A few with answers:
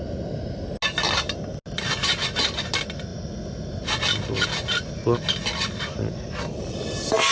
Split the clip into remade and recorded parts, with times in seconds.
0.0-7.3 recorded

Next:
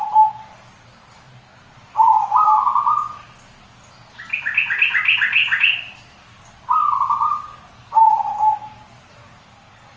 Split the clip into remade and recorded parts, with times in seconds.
0.0-10.0 recorded

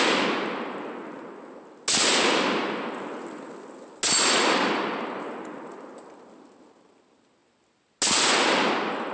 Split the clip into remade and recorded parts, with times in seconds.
0.0-9.1 recorded

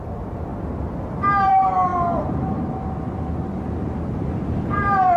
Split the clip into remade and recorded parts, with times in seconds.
0.0-0.5 remade; 0.5-1.5 recorded; 1.5-1.9 remade; 1.9-5.2 recorded

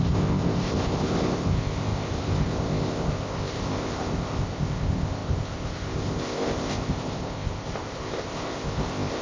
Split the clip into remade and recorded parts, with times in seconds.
0.0-9.2 remade

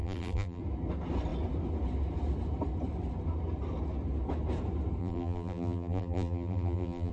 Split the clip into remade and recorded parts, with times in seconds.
0.0-0.6 remade; 0.6-5.0 recorded; 5.0-7.1 remade